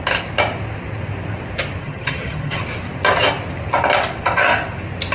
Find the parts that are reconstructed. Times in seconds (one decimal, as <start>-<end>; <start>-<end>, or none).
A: 1.8-2.6